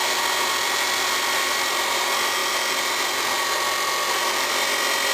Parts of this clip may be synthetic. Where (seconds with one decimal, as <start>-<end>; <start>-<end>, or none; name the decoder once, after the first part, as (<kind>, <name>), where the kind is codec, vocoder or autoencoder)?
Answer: 2.4-3.0 (vocoder, BigVGAN v2)